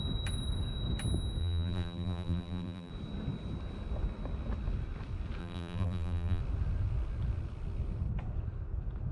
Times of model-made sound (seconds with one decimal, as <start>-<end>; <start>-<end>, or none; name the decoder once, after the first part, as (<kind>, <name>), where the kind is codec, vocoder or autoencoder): 1.4-2.9 (vocoder, BigVGAN v2); 5.4-6.4